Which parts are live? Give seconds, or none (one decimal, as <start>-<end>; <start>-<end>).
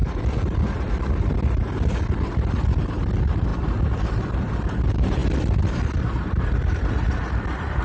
0.0-2.8; 5.2-6.0